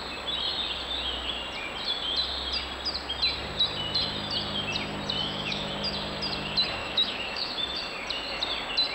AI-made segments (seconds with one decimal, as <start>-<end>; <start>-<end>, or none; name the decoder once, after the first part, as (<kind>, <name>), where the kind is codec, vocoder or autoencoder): 5.2-5.7 (autoencoder, DAC-VAE); 6.8-7.8